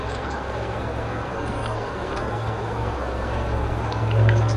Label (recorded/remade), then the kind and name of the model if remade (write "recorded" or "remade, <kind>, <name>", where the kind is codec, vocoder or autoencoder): remade, codec, SNAC